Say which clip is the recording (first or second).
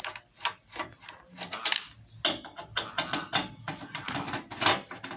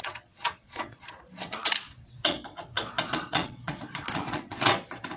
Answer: first